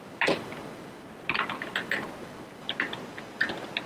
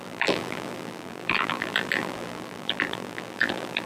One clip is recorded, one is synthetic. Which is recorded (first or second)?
first